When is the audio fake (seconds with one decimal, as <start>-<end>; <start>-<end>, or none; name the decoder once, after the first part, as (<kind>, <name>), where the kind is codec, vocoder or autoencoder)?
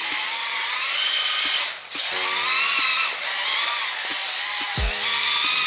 none